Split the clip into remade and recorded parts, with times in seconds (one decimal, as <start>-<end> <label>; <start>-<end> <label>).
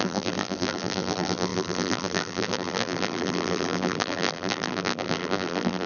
0.0-5.9 remade